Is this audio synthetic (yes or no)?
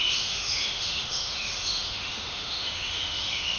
yes